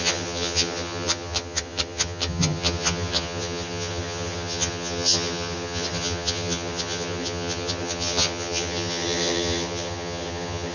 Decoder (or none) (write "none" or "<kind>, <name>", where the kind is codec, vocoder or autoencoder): vocoder, HiFi-GAN